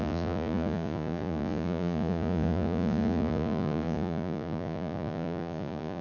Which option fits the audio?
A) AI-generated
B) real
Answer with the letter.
A